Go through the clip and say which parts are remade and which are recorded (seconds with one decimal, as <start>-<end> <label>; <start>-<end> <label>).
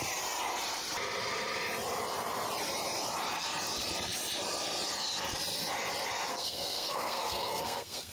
0.0-6.3 recorded; 6.3-8.1 remade